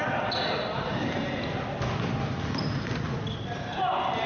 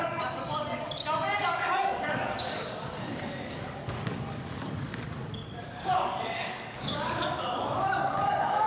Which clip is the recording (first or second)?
first